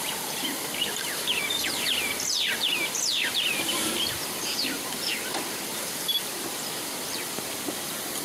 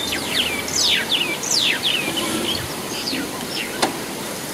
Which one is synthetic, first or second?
first